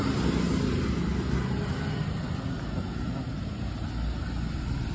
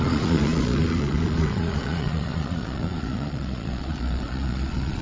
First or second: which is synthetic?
second